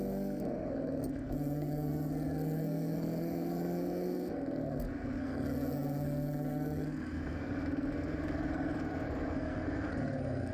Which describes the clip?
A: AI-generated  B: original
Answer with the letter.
A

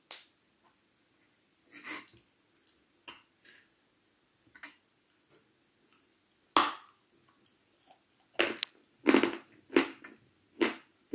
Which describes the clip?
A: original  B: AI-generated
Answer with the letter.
A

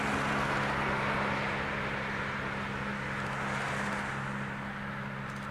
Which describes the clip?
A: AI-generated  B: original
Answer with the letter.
B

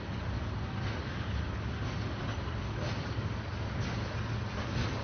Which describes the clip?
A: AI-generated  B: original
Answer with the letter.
B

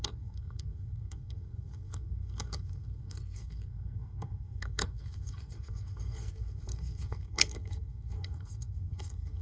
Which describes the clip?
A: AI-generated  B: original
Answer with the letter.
A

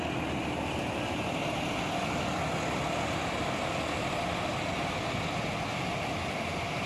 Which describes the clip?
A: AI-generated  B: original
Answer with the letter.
B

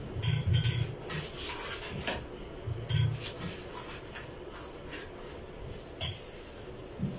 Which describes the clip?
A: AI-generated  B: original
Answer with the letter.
B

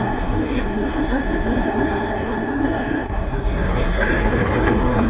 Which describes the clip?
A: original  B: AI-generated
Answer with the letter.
B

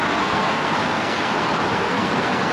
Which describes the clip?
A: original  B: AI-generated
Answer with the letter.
B